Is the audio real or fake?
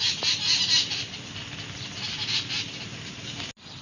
real